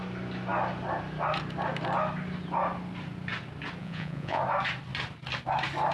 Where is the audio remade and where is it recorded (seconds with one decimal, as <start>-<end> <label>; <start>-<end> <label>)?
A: 0.0-3.8 recorded; 3.8-4.4 remade; 4.4-5.9 recorded